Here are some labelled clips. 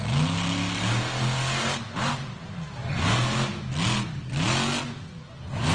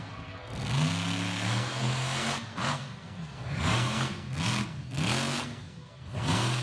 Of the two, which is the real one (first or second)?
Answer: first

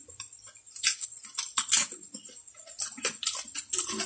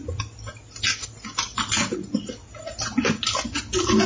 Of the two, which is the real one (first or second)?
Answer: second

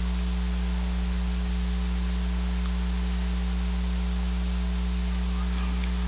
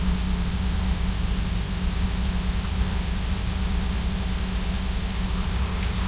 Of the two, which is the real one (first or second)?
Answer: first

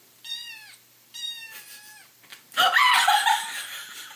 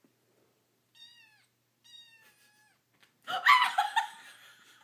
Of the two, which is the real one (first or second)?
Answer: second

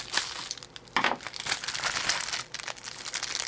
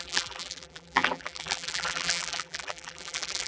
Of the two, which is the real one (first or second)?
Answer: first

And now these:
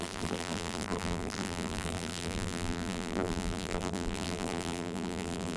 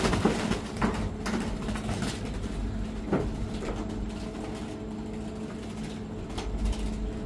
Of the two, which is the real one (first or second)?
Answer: second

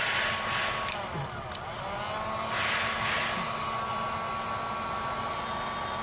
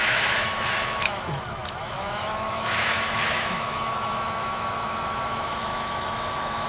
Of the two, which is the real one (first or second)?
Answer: first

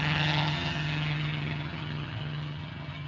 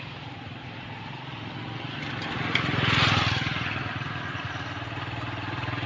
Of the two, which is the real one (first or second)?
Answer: second